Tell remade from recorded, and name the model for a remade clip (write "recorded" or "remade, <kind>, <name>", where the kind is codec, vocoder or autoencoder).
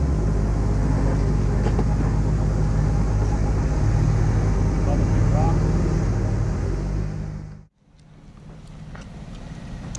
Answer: recorded